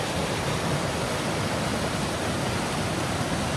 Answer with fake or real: real